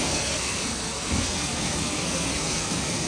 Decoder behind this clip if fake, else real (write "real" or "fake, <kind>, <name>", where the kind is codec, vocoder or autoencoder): fake, codec, SNAC